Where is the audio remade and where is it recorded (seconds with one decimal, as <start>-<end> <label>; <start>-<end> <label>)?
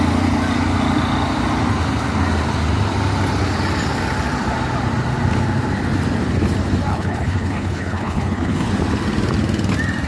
0.0-6.9 recorded; 6.9-8.7 remade; 8.7-10.1 recorded